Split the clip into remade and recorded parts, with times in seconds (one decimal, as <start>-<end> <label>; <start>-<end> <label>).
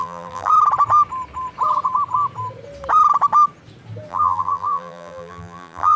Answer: 0.0-0.5 remade; 0.5-4.1 recorded; 4.1-6.0 remade